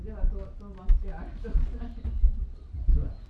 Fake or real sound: real